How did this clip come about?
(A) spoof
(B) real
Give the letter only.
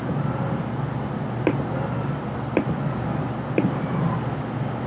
B